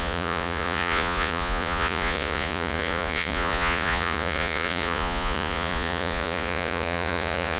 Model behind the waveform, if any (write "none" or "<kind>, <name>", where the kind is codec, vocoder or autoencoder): vocoder, Vocos